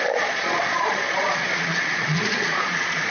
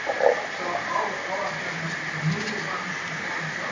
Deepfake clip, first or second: first